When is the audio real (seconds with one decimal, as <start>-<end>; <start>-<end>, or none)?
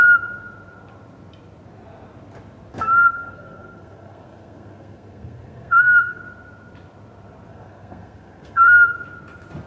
0.0-2.7; 6.2-7.5; 8.9-9.7